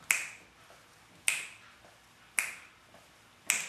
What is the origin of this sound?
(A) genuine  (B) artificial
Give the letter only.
A